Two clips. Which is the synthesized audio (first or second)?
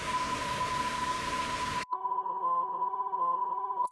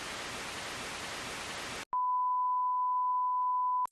first